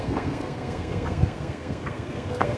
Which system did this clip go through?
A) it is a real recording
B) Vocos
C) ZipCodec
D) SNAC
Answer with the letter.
D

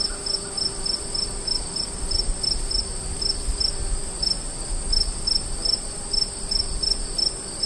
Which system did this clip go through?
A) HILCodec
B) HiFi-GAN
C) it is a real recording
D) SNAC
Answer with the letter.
C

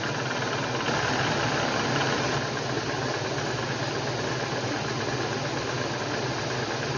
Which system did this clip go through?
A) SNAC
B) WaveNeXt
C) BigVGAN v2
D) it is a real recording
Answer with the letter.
D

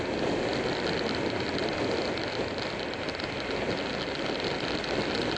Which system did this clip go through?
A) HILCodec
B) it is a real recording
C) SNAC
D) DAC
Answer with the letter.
B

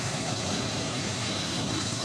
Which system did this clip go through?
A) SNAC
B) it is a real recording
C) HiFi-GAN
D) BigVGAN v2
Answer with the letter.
A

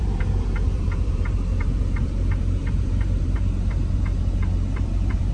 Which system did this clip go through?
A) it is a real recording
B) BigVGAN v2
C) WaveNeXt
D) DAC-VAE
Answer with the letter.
B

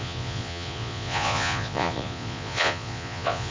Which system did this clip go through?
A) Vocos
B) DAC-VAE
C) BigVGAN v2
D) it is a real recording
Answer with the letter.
A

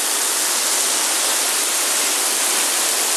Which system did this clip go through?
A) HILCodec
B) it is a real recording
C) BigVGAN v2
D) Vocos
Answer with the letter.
B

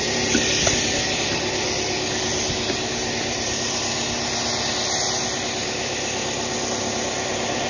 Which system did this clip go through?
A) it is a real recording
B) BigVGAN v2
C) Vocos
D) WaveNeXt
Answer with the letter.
A